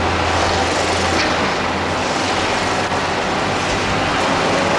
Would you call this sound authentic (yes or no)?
yes